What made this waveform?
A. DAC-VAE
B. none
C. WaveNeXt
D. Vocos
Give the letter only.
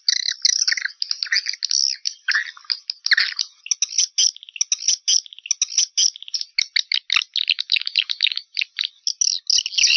B